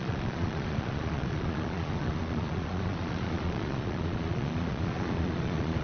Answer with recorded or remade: remade